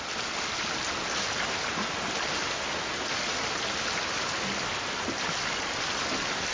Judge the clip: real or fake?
real